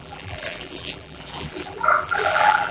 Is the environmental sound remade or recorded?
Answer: remade